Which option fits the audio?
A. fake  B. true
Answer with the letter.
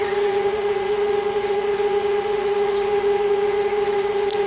A